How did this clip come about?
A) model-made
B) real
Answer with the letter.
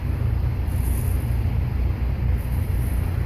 B